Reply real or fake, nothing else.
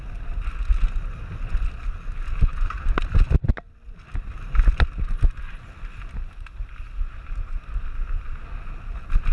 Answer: real